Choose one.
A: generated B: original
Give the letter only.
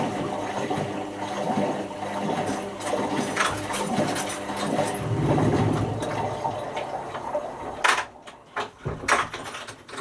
B